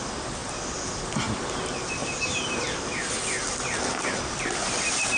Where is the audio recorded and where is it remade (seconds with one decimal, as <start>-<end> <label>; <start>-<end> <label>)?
0.0-2.0 recorded; 2.0-2.6 remade; 2.6-5.2 recorded